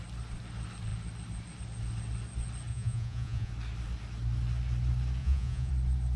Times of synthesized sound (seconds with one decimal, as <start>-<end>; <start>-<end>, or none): 2.7-3.5; 5.2-5.7